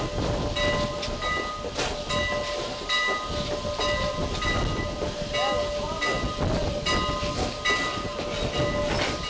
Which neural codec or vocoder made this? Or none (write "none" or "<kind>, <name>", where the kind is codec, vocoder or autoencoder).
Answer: none